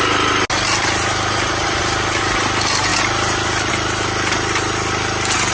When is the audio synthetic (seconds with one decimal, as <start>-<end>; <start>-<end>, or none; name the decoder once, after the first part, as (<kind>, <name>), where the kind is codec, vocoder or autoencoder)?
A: none